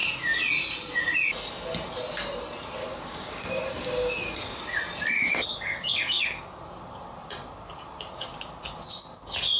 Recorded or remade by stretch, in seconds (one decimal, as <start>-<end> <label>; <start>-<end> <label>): 0.0-2.8 recorded; 2.8-4.6 remade; 4.6-5.5 recorded; 5.5-6.6 remade; 6.6-9.6 recorded